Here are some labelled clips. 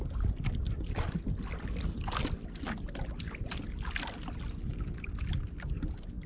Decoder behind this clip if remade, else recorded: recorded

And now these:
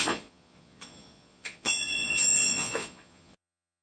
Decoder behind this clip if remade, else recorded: remade, vocoder, Vocos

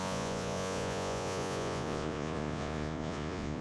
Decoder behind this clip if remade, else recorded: remade, vocoder, Vocos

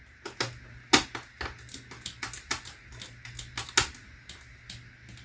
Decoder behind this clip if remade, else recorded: recorded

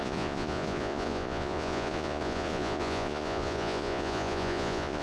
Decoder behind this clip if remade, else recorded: remade, vocoder, Vocos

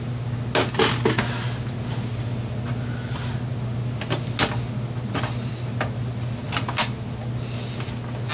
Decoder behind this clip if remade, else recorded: recorded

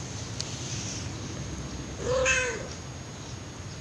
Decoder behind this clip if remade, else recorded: recorded